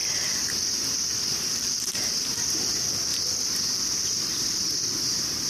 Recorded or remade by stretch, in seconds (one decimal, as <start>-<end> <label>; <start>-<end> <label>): 0.0-3.1 remade; 3.1-4.1 recorded; 4.1-5.5 remade